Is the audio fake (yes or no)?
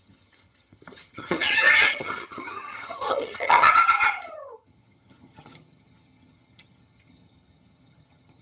yes